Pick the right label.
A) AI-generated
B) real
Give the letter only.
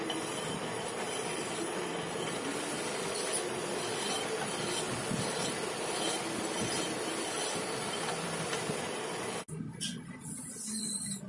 B